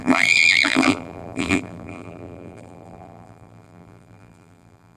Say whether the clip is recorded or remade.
remade